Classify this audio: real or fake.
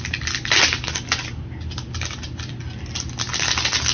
real